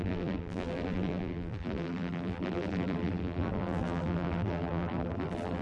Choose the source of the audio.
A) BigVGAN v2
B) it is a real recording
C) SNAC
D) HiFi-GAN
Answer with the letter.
A